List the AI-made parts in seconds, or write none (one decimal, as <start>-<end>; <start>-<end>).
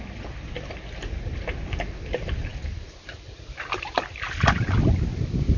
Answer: none